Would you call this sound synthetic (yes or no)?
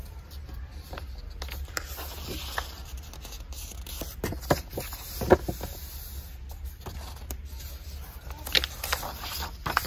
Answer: no